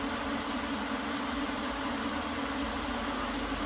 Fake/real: real